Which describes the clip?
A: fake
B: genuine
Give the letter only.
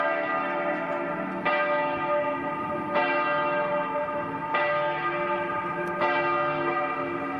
B